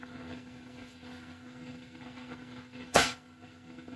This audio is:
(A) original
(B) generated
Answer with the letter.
B